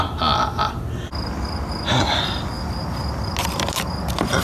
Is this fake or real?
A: real